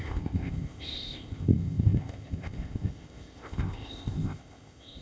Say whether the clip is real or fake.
fake